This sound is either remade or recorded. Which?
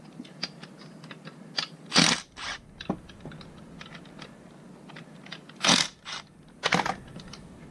recorded